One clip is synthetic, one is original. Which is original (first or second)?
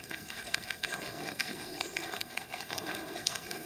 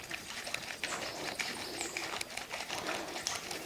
second